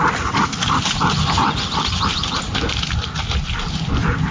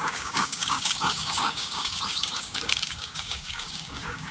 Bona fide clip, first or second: first